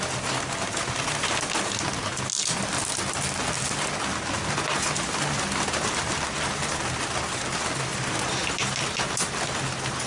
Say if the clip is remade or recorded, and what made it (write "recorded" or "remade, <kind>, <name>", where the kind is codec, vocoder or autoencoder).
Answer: recorded